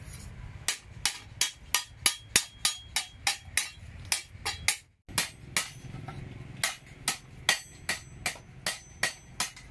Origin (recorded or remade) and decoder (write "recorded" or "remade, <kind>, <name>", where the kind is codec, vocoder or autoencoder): recorded